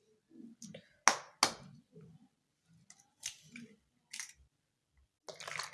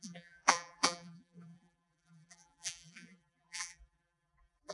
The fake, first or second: second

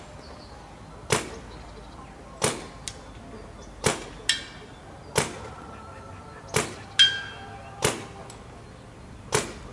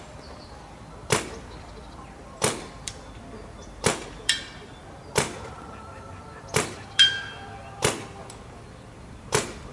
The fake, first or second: second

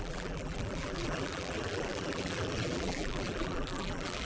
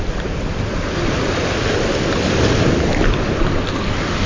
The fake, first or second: first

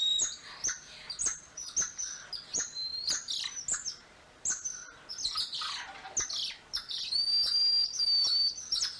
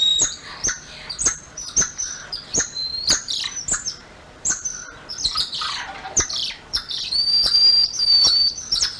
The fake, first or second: second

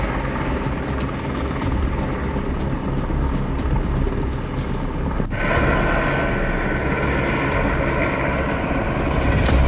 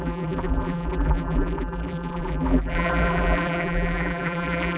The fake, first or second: second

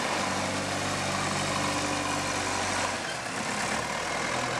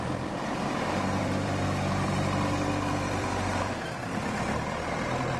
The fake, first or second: second